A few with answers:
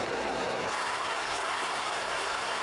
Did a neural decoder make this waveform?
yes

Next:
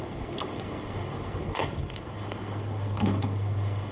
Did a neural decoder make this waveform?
yes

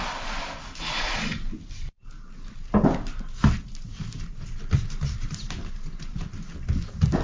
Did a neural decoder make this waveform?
no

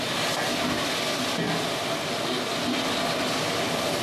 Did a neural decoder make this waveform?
no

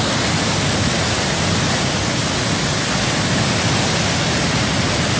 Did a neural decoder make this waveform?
no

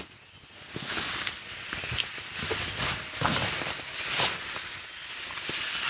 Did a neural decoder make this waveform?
no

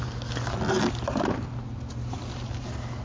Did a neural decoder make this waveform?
no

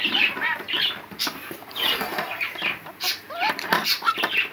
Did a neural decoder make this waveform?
yes